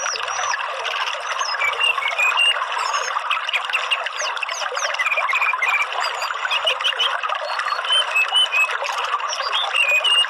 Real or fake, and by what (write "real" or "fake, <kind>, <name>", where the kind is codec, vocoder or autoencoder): real